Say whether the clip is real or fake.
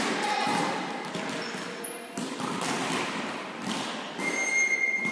real